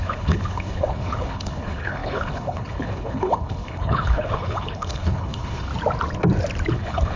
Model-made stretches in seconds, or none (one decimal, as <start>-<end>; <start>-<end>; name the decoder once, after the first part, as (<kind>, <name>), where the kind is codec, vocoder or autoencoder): 0.0-5.7 (codec, HILCodec); 6.7-7.2